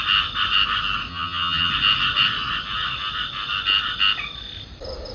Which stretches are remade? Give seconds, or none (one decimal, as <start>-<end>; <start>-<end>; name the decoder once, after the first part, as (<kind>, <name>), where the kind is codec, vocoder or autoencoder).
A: 1.1-1.7 (vocoder, HiFi-GAN)